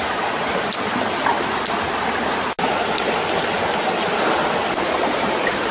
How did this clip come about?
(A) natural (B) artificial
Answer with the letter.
A